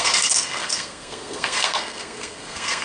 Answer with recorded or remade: remade